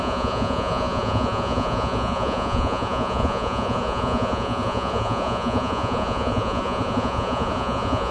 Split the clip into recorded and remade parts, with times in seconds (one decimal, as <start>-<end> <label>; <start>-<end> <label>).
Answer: 0.0-8.1 remade

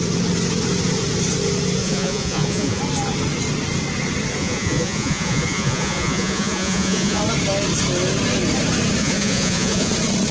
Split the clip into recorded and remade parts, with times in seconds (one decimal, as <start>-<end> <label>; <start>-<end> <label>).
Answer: 0.0-1.8 recorded; 1.8-2.8 remade; 2.8-4.4 recorded; 4.4-7.2 remade; 7.2-9.0 recorded; 9.0-9.9 remade; 9.9-10.3 recorded